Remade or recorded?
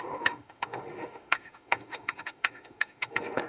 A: remade